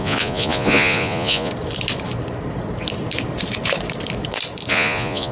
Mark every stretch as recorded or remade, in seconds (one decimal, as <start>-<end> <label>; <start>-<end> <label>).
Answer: 0.0-1.5 remade; 1.5-4.7 recorded; 4.7-5.3 remade